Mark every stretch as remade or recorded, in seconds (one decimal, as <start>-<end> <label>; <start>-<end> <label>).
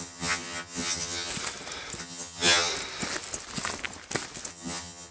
0.0-1.3 remade; 1.3-2.0 recorded; 2.0-2.7 remade; 2.7-4.5 recorded; 4.5-5.1 remade